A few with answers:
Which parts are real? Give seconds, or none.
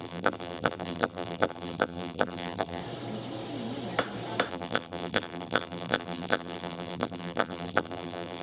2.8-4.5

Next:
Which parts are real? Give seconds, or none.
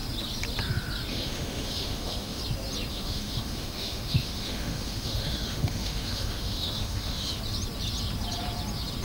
0.0-1.1; 2.4-2.9; 7.4-9.0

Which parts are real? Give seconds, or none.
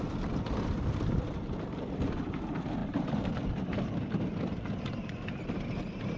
0.0-2.8; 3.4-6.2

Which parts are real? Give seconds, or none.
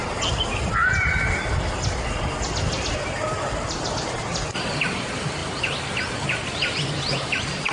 0.0-4.6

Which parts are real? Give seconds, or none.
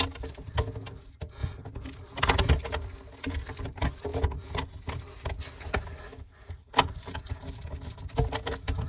0.0-8.9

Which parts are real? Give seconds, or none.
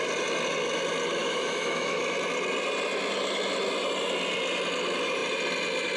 0.0-1.2; 2.0-6.0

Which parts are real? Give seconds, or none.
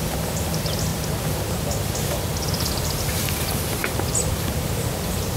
none